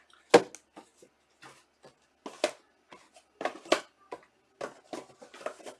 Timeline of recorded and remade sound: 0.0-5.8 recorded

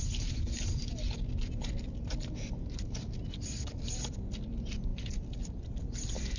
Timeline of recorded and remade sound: 0.0-6.4 recorded

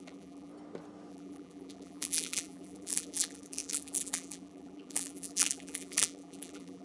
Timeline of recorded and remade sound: 0.0-0.5 remade; 0.5-1.1 recorded; 1.1-6.8 remade

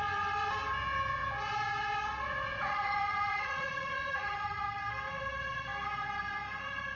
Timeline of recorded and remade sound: 0.0-2.5 recorded; 2.5-4.6 remade; 4.6-7.0 recorded

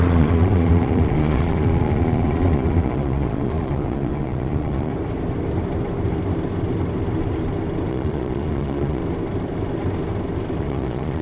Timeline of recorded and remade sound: 0.0-4.9 remade; 4.9-7.9 recorded; 7.9-9.0 remade; 9.0-10.6 recorded; 10.6-11.2 remade

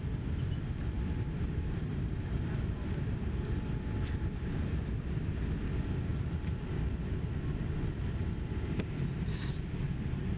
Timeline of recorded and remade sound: 0.0-10.4 recorded